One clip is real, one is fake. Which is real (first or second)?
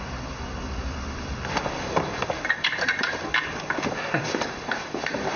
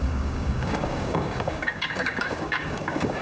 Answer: first